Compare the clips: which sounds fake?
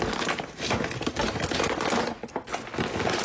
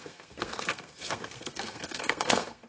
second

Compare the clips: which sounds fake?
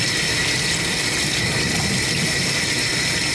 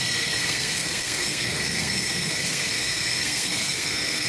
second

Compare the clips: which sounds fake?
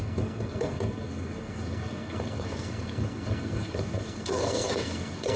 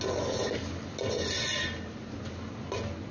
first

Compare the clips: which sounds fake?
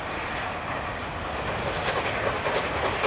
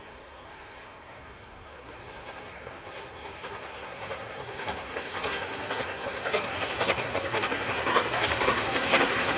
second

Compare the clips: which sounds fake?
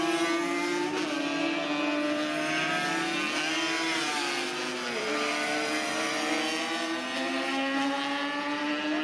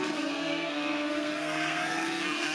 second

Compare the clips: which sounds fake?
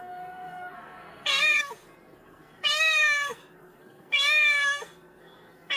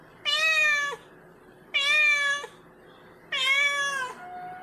first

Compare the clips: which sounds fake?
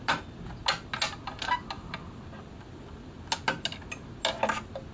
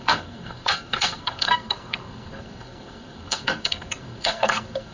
second